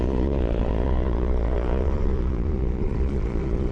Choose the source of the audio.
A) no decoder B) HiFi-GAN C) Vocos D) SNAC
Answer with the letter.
C